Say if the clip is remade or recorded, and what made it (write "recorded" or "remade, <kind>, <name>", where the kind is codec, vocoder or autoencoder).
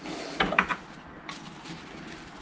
recorded